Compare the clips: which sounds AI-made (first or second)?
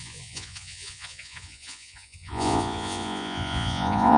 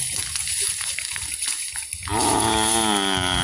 first